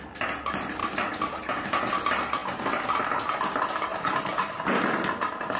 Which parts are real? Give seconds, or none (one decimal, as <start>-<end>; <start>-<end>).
0.0-0.8; 1.8-3.9; 4.7-5.6